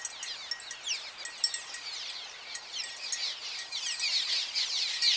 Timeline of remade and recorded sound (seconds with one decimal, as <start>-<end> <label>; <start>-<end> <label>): 0.0-5.2 recorded